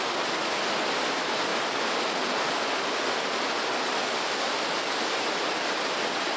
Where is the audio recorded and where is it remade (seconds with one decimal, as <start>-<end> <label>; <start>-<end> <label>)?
0.0-6.4 recorded